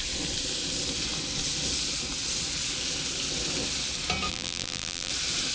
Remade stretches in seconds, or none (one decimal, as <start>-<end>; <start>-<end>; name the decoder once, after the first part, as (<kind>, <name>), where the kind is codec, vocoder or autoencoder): 4.3-5.1 (vocoder, BigVGAN v2)